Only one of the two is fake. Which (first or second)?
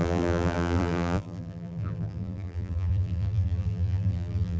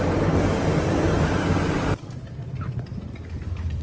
first